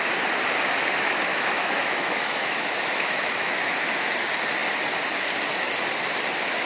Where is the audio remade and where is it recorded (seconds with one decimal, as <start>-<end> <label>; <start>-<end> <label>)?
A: 0.0-1.3 recorded; 1.3-3.6 remade; 3.6-6.7 recorded